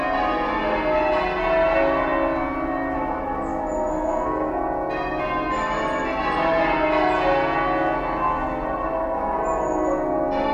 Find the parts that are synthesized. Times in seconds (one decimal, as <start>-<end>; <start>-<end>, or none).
3.9-4.5